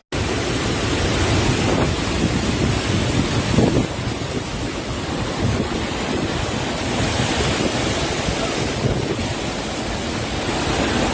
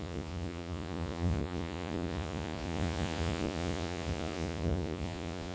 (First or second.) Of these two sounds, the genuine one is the first